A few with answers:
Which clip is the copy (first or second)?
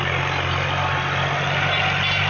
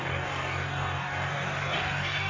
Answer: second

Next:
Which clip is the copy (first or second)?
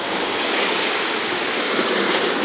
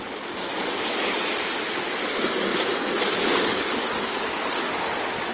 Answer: first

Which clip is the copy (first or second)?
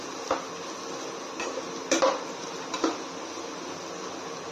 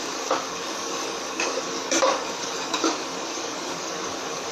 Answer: second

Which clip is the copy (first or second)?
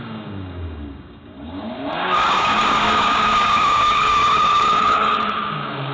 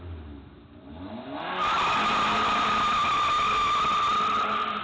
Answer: first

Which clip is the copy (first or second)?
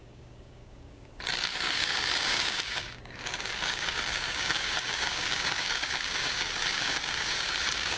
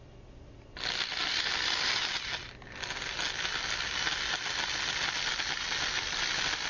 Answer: first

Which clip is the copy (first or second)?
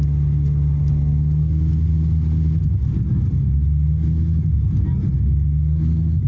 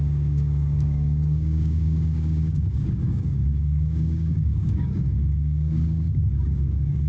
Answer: second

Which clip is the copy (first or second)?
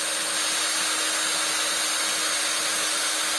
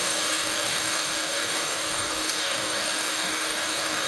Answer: second